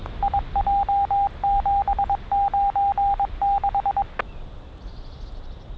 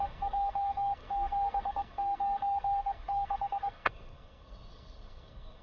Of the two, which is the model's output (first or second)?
second